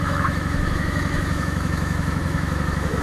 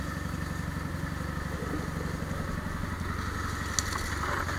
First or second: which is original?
second